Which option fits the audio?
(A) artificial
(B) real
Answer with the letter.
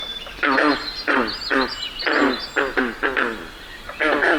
B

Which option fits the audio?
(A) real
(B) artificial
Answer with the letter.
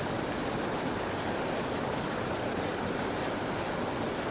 A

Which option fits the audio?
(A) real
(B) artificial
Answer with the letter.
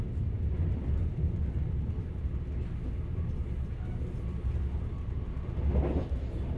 A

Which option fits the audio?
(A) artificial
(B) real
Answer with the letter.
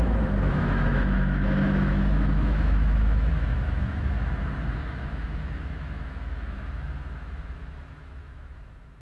A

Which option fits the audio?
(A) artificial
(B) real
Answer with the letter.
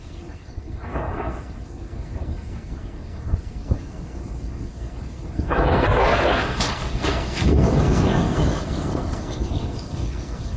A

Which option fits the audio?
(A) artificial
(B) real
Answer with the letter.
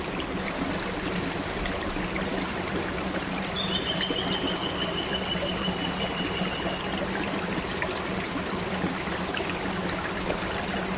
B